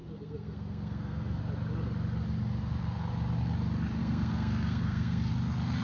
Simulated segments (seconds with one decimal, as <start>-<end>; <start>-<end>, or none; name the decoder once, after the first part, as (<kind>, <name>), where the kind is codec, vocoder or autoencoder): 0.0-1.4 (codec, SNAC); 4.0-5.3